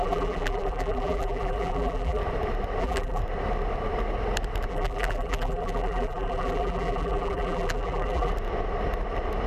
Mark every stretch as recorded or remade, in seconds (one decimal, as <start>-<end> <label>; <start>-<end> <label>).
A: 0.0-2.2 remade; 2.2-2.8 recorded; 2.8-3.2 remade; 3.2-4.7 recorded; 4.7-8.3 remade; 8.3-9.5 recorded